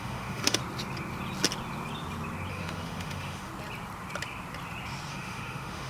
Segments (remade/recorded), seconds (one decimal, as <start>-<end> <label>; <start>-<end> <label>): 0.0-0.6 remade; 0.6-2.5 recorded; 2.5-3.5 remade; 3.5-5.1 recorded; 5.1-5.9 remade